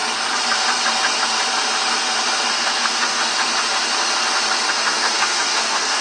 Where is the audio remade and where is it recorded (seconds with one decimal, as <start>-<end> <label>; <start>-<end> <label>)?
0.0-2.5 recorded; 2.5-3.3 remade; 3.3-4.7 recorded; 4.7-6.0 remade

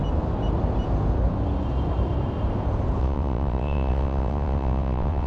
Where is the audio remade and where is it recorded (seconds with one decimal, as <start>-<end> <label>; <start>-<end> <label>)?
0.0-3.0 recorded; 3.0-5.3 remade